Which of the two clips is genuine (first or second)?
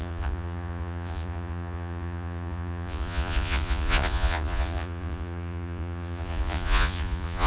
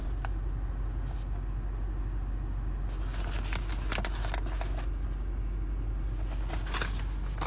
second